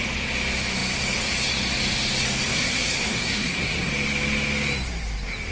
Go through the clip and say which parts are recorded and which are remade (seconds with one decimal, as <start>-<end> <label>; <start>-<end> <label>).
0.0-2.5 recorded; 2.5-3.9 remade; 3.9-5.5 recorded